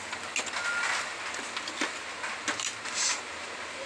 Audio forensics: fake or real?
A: real